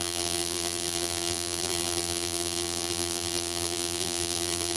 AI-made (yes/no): yes